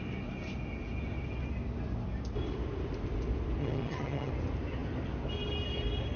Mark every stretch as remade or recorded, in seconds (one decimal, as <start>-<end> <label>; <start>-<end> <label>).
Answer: 0.0-3.6 recorded; 3.6-4.3 remade; 4.3-6.2 recorded